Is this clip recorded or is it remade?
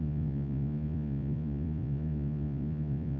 remade